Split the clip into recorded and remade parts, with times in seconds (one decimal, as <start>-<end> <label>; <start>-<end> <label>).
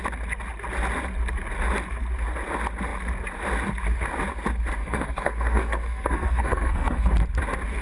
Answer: 0.0-4.8 recorded; 4.8-7.1 remade; 7.1-7.8 recorded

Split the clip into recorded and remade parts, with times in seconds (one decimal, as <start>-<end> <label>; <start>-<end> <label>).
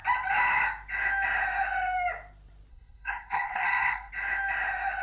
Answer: 0.0-2.7 recorded; 2.7-4.1 remade; 4.1-5.0 recorded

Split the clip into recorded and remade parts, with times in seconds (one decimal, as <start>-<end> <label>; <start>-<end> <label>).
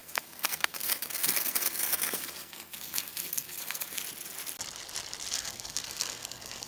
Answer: 0.0-4.0 remade; 4.0-5.3 recorded; 5.3-6.7 remade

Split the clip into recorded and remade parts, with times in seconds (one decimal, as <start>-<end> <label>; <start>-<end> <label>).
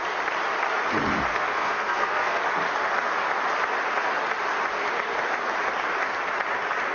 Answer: 0.0-1.3 recorded; 1.3-2.4 remade; 2.4-6.9 recorded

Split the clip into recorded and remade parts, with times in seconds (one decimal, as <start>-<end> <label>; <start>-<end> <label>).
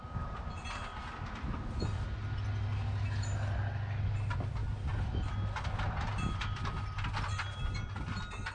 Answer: 0.0-8.5 recorded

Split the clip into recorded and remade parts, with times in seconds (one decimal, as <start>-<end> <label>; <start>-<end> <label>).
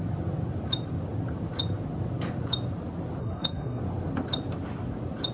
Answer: 0.0-3.2 recorded; 3.2-3.8 remade; 3.8-5.3 recorded